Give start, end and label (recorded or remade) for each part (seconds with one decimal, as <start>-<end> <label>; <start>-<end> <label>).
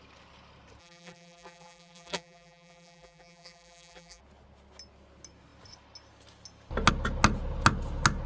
0.0-0.8 recorded; 0.8-4.2 remade; 4.2-8.3 recorded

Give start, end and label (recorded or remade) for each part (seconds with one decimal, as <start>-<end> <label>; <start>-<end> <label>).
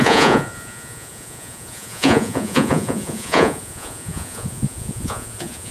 0.0-5.7 remade